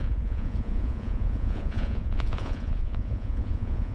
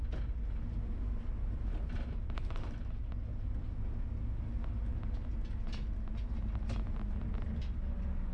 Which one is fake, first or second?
first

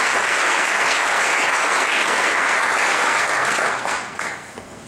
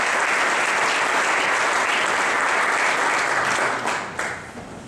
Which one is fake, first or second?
first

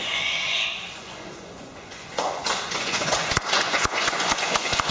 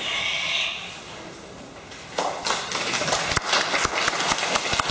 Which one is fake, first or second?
first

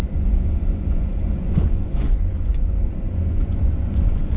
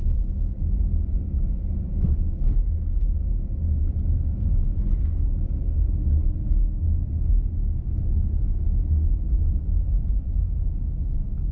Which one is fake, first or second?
first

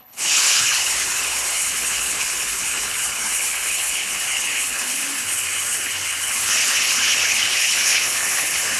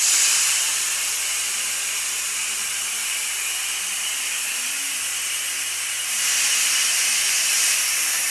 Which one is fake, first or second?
first